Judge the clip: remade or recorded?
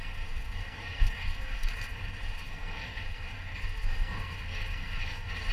remade